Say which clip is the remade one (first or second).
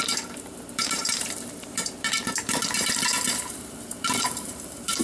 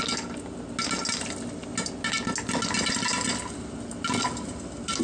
first